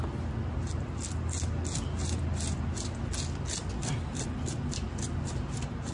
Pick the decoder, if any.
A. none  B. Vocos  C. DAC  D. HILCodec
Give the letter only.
A